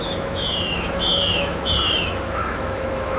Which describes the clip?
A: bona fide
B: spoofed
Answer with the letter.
B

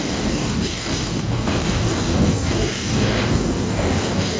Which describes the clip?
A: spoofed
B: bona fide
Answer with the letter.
A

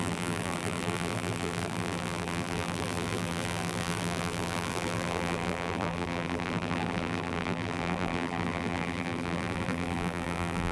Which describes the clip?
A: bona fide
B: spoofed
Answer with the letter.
B